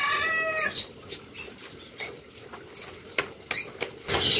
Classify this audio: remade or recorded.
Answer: recorded